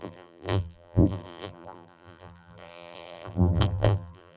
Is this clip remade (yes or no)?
yes